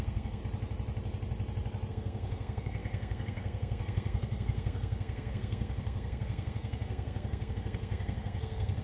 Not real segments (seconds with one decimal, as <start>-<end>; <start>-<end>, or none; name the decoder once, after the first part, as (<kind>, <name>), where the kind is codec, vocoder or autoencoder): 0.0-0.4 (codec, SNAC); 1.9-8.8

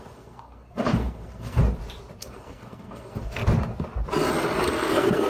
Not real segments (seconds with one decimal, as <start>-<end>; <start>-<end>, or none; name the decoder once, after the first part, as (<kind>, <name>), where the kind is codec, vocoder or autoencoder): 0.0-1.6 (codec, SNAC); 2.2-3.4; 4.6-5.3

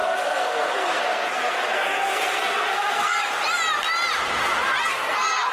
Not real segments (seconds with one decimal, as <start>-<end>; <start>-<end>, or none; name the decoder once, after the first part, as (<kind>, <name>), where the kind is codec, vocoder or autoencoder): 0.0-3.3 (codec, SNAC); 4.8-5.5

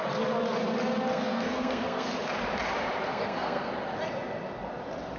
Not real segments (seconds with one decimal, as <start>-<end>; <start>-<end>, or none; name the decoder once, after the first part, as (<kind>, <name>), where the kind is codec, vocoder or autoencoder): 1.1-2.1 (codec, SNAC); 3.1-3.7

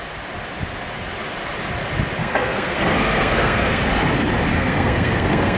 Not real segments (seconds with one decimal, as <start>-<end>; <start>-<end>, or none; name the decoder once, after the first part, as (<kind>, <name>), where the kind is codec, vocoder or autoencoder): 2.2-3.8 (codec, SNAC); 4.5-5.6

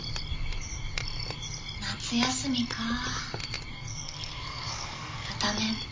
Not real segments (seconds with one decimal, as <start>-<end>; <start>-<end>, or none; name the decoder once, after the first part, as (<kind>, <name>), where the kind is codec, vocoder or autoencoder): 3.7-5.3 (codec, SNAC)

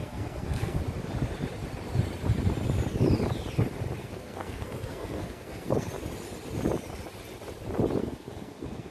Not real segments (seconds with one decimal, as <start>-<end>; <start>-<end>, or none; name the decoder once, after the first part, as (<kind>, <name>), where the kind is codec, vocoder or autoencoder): 0.0-0.8 (codec, SNAC); 4.0-5.9; 8.0-8.9

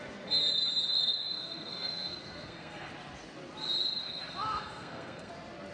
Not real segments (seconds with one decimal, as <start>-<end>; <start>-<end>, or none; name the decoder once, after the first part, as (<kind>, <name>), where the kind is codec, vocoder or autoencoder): 1.0-2.9 (codec, SNAC); 4.0-5.3